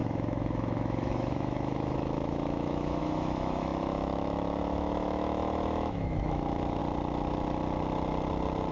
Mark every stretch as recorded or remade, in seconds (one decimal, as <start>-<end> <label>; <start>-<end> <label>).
0.0-6.8 remade; 6.8-8.7 recorded